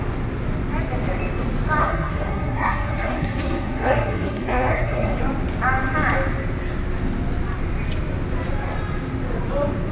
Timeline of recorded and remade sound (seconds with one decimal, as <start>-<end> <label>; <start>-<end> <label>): 0.0-1.8 recorded; 1.8-5.2 remade; 5.2-9.9 recorded